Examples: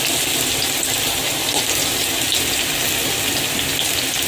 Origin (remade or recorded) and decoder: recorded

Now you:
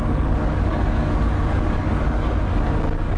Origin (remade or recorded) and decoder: remade, codec, DAC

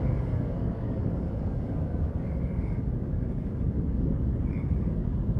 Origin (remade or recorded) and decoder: remade, codec, DAC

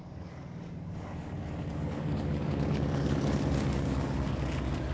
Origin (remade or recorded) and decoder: remade, codec, DAC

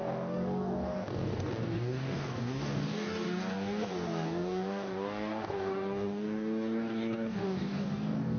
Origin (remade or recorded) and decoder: remade, codec, DAC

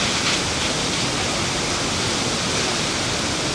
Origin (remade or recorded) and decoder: recorded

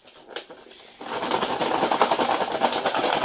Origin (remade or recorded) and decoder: recorded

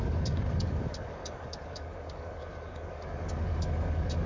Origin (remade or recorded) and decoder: remade, codec, DAC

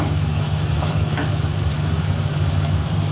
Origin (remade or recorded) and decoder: remade, codec, DAC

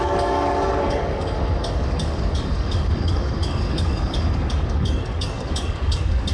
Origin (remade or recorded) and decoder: remade, codec, DAC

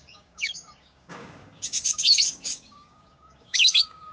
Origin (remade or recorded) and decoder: remade, codec, DAC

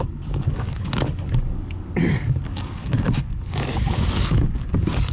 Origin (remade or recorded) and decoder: remade, codec, DAC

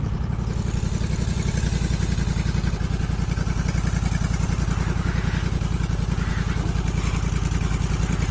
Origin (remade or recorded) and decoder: recorded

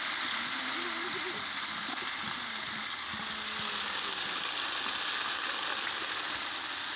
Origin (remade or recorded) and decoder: recorded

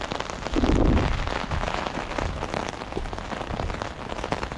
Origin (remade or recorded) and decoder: recorded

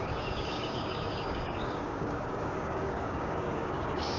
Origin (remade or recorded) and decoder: remade, codec, DAC